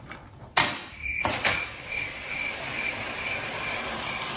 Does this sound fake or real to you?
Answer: real